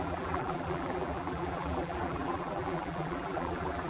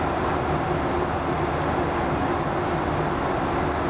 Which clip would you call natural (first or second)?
second